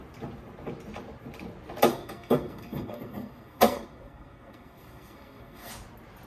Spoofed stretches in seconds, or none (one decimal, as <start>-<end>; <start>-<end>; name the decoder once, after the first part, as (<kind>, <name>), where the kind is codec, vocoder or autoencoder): 1.9-5.7 (codec, SNAC)